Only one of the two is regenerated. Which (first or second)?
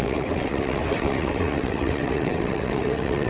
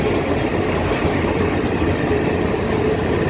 first